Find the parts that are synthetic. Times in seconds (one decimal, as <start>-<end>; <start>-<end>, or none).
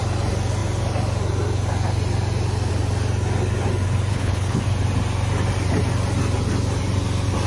4.1-4.6